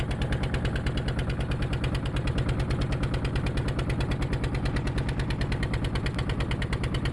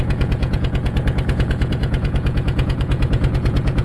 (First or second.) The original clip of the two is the first